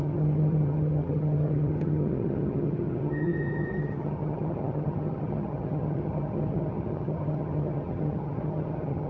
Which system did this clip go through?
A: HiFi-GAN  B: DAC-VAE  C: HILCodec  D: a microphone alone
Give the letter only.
A